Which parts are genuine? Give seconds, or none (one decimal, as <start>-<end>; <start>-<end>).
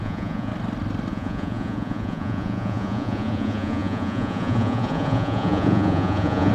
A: 0.5-1.1